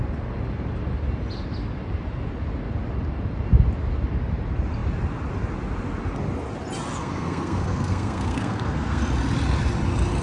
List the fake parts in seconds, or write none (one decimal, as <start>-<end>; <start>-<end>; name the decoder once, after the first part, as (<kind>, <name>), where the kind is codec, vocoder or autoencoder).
7.0-9.0 (codec, SNAC)